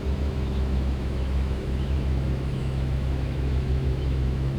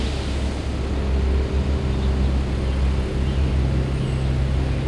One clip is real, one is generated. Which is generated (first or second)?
first